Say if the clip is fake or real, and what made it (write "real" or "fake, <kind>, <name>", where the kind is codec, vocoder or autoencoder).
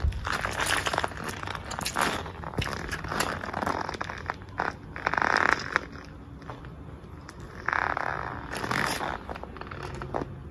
real